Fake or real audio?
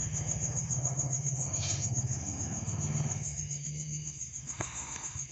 fake